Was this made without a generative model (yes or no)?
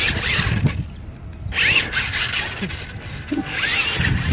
yes